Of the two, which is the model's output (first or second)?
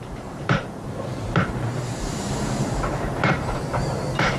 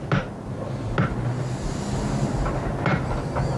first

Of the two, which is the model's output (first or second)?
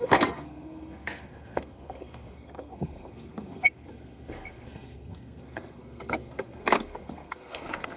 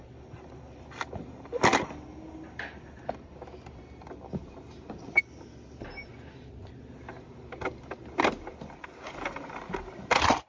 first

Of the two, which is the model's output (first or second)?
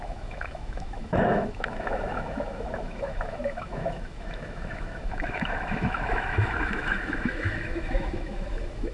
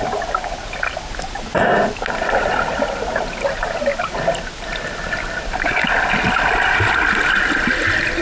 first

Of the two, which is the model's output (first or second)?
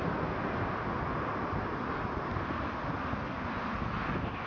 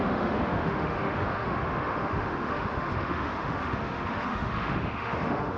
second